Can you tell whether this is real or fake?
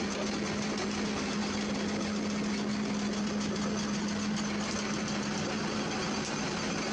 real